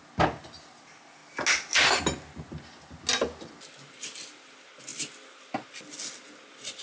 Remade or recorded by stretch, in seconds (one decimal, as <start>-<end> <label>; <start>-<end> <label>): 0.0-6.8 recorded